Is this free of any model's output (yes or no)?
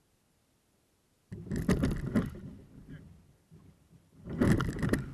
yes